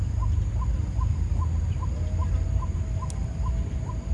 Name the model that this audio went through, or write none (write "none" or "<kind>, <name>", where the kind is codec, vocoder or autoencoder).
none